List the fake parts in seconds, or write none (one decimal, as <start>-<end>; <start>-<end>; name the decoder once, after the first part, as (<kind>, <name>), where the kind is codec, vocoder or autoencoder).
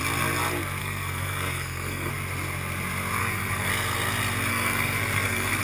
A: 0.8-2.1 (codec, SNAC); 3.2-3.7; 4.5-5.6